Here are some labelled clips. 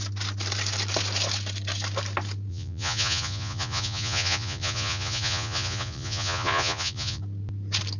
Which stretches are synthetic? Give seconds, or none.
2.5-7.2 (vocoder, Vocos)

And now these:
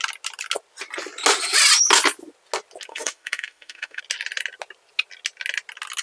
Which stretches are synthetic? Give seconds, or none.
2.9-4.0 (autoencoder, DAC-VAE)

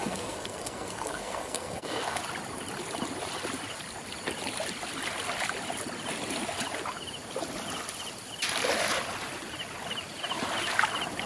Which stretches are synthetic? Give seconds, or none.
0.0-2.2 (codec, SNAC)

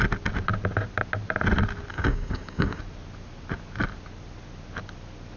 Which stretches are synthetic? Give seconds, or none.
1.9-2.8 (codec, DAC)

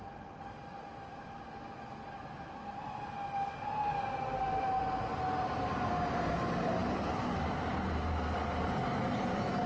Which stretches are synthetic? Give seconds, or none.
6.8-7.6 (vocoder, BigVGAN v2)

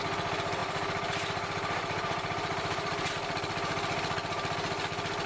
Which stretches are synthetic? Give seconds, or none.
0.6-3.1 (vocoder, BigVGAN v2)

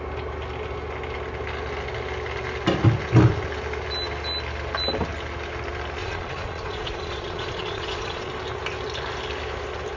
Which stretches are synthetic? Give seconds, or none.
6.0-8.3 (vocoder, Vocos)

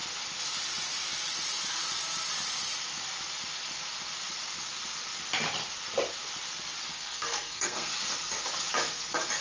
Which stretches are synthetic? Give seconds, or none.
6.9-7.9 (codec, SNAC)